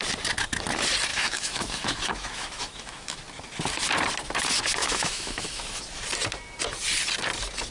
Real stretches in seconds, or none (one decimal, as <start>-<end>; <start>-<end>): 0.0-1.1; 3.2-4.8; 5.8-7.7